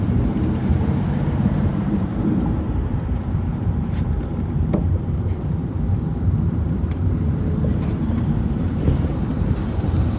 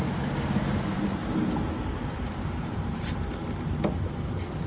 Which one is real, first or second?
second